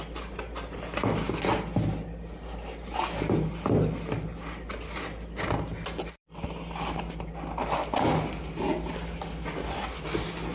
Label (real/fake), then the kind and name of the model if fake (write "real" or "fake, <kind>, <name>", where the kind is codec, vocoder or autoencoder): real